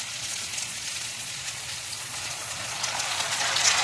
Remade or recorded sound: remade